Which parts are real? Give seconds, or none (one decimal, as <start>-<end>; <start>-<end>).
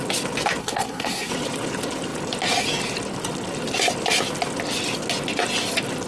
0.0-0.6; 1.3-6.1